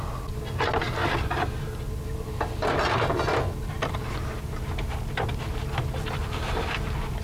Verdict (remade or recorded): recorded